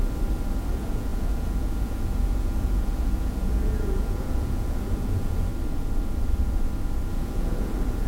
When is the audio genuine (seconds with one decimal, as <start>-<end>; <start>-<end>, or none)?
0.0-0.7; 5.5-7.1